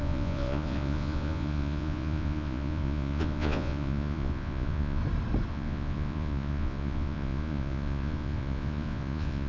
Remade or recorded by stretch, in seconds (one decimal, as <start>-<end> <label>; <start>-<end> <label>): 0.0-5.0 remade; 5.0-5.5 recorded; 5.5-9.5 remade